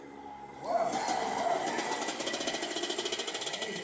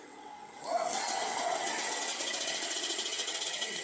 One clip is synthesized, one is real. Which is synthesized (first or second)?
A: second